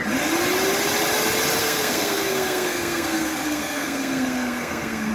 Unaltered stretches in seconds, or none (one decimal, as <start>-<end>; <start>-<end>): 0.0-1.6